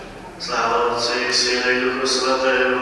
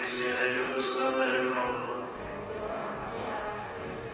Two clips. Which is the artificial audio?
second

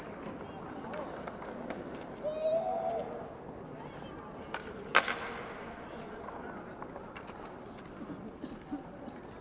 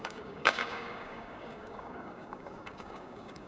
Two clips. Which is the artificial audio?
second